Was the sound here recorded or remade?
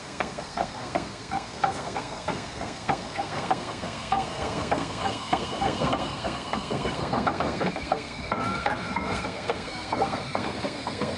remade